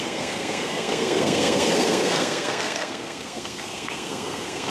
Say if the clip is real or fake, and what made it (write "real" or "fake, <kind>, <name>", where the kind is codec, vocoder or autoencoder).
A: fake, codec, SNAC